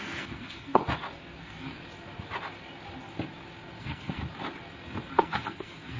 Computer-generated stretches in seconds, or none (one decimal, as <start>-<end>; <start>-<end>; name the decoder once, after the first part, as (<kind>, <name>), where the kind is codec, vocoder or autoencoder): 0.0-0.8 (codec, SNAC); 1.4-1.8; 3.8-4.2; 5.1-6.0